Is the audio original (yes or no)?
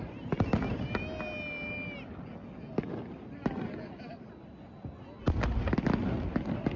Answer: yes